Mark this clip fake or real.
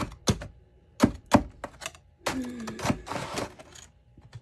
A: real